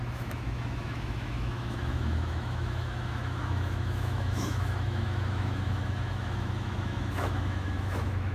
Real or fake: fake